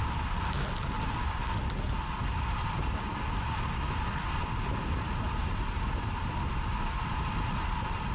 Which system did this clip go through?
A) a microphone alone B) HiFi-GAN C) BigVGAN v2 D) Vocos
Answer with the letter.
A